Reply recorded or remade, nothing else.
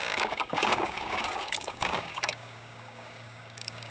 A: remade